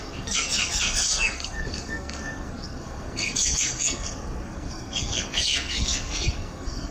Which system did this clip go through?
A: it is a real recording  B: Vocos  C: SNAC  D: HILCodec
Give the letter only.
C